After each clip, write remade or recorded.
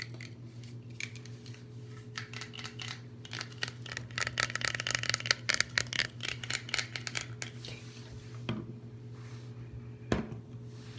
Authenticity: recorded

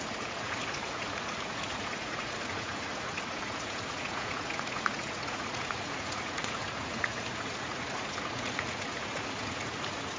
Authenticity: remade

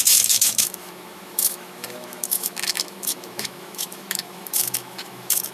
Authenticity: remade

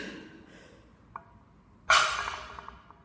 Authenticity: recorded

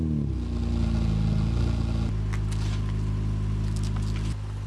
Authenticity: recorded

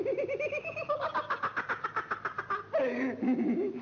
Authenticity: recorded